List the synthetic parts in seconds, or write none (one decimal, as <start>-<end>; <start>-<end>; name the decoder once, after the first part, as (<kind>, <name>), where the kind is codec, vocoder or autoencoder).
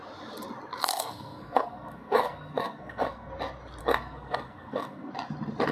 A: 0.8-3.3 (codec, SNAC); 3.8-5.1